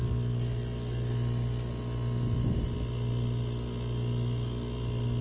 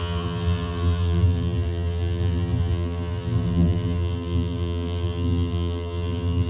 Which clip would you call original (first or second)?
first